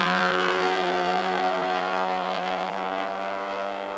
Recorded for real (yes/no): no